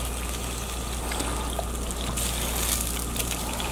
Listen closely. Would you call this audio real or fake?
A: real